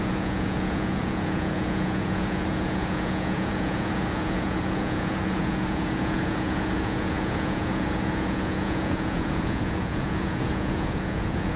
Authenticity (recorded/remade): remade